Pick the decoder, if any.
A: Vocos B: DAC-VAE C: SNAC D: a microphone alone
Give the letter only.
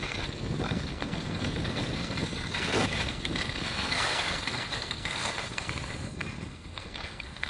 C